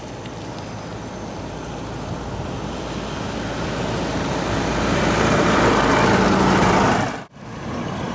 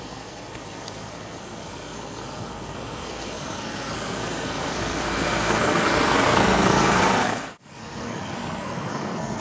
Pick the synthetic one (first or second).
second